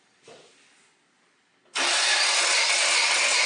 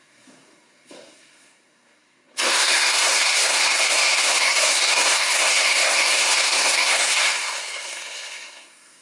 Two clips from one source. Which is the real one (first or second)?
first